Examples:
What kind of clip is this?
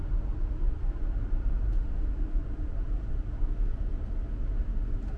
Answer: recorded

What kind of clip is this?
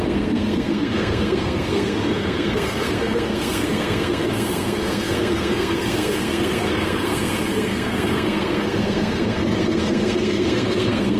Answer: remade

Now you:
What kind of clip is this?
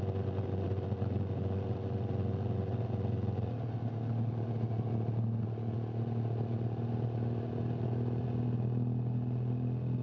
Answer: recorded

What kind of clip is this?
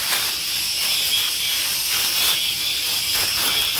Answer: recorded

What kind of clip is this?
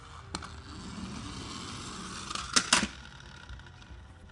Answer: recorded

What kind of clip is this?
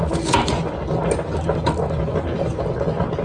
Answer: recorded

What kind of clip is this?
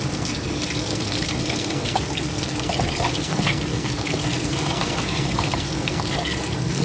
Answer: remade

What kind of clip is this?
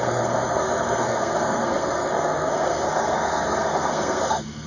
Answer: remade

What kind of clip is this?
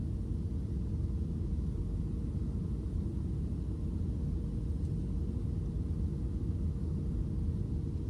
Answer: recorded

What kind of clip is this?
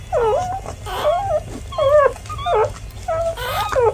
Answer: recorded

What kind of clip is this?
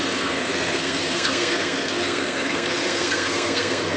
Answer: remade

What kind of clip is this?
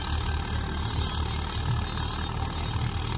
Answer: recorded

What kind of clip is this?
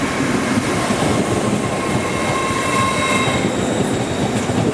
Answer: recorded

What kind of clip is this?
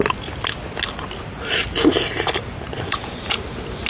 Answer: recorded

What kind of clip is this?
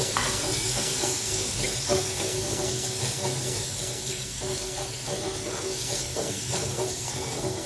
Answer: remade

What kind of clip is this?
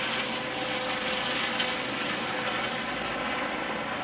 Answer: recorded